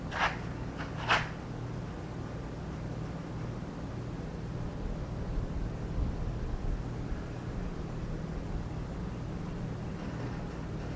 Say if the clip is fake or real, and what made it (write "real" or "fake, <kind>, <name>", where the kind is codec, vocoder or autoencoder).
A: real